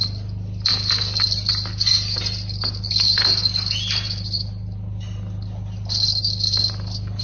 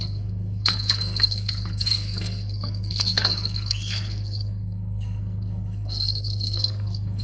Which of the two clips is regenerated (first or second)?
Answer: second